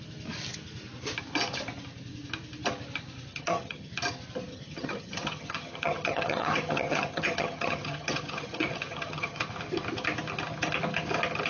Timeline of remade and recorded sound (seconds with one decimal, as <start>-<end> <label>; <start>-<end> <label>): 0.0-3.3 recorded; 3.3-3.9 remade; 3.9-4.5 recorded; 4.5-9.4 remade; 9.4-11.5 recorded

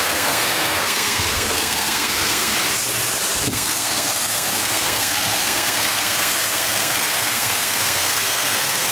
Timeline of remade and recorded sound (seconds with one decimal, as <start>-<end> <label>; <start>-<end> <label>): 0.0-2.5 remade; 2.5-3.4 recorded; 3.4-8.9 remade

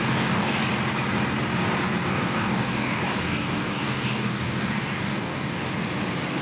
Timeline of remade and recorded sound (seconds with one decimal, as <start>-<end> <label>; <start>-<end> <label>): 0.0-0.6 remade; 0.6-2.1 recorded; 2.1-5.7 remade; 5.7-6.4 recorded